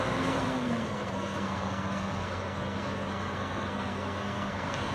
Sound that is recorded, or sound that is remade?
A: remade